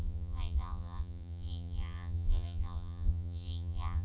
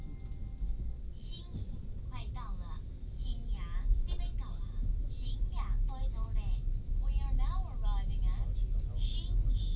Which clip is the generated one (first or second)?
first